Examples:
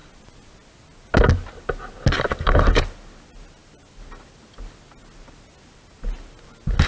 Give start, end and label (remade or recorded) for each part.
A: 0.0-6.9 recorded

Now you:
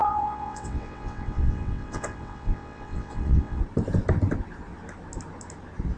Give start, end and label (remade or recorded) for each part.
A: 0.0-3.6 remade; 3.6-6.0 recorded

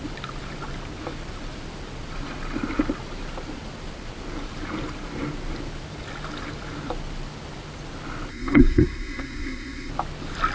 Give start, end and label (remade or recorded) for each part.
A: 0.0-8.3 recorded; 8.3-9.9 remade; 9.9-10.5 recorded

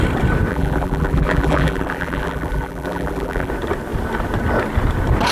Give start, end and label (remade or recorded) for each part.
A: 0.0-0.5 recorded; 0.5-3.5 remade; 3.5-5.3 recorded

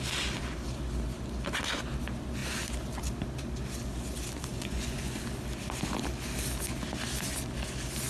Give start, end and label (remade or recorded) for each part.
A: 0.0-4.5 recorded; 4.5-5.2 remade; 5.2-8.1 recorded

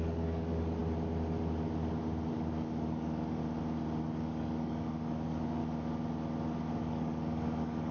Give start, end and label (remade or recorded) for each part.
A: 0.0-0.8 remade; 0.8-2.3 recorded; 2.3-3.4 remade; 3.4-4.0 recorded; 4.0-5.6 remade; 5.6-6.8 recorded; 6.8-7.9 remade